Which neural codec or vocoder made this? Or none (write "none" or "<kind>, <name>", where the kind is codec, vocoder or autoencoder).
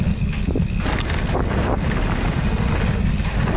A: none